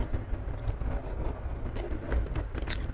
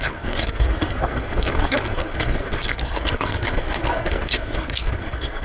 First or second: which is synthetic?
second